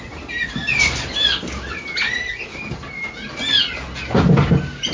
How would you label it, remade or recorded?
recorded